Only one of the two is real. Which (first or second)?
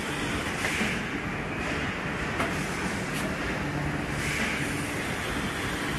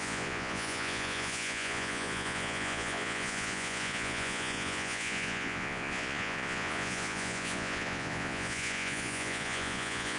first